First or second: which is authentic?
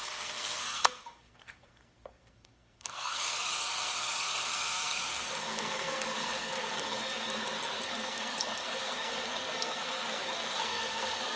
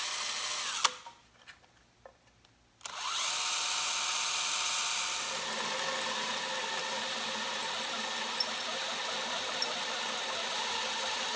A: second